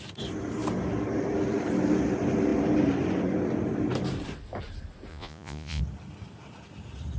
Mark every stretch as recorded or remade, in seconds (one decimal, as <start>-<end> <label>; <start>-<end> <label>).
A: 0.0-5.1 recorded; 5.1-5.8 remade; 5.8-7.2 recorded